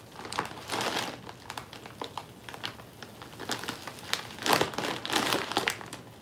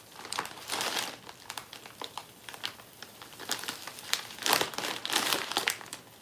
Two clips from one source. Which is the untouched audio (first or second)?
first